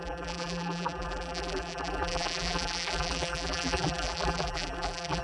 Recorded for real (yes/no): no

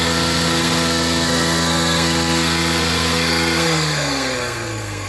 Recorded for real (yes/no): no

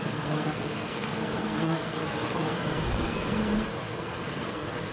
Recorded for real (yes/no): no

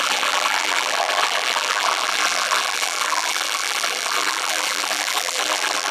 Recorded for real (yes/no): no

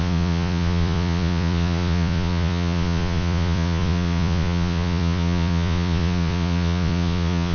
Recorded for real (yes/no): no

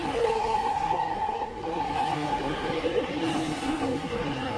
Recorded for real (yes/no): no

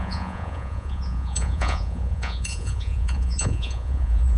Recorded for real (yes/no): no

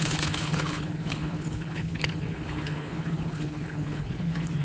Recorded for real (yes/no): no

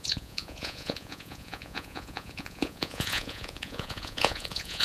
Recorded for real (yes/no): no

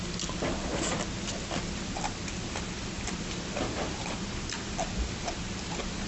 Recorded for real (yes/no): yes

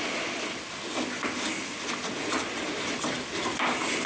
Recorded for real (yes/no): yes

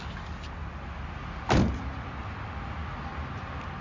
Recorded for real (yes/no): yes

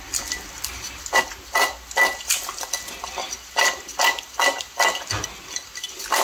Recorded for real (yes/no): yes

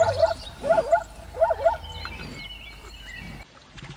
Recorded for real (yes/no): no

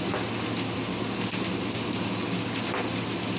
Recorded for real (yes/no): yes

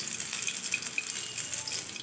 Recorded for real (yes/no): yes